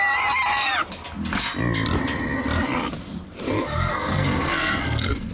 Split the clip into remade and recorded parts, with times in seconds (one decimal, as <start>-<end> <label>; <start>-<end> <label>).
0.0-3.5 recorded; 3.5-5.3 remade